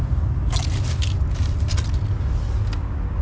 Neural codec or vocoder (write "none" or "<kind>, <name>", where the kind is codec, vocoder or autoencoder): none